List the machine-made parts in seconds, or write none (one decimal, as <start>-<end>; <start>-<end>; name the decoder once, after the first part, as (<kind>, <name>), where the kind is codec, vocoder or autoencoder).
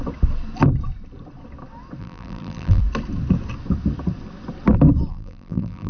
2.0-2.8 (vocoder, BigVGAN v2); 5.1-5.9